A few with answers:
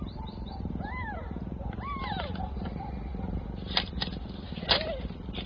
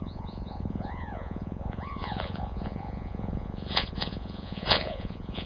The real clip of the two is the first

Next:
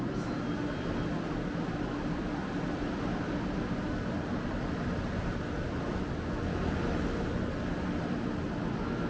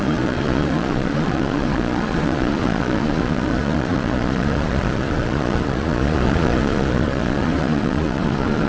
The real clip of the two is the first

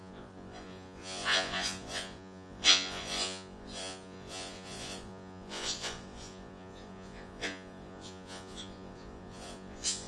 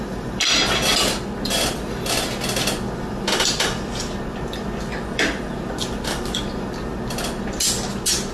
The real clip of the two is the second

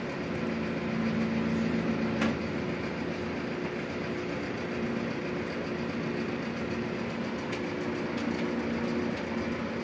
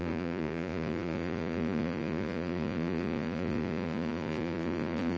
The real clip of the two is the first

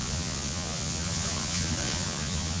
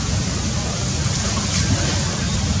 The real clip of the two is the second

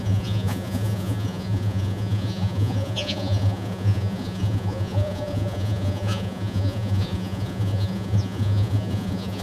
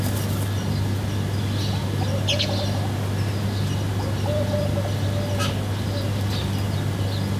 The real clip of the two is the second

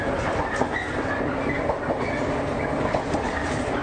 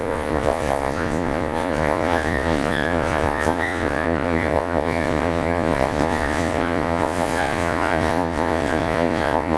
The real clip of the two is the first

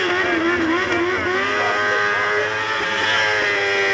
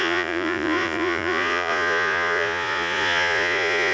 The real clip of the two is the first